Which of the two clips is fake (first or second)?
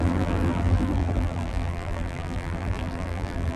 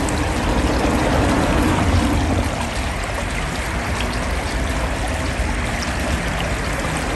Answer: first